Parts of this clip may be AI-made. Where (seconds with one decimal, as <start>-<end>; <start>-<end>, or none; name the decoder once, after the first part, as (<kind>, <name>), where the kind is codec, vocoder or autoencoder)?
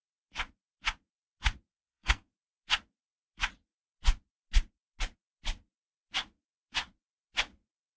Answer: 1.7-2.3 (codec, SNAC)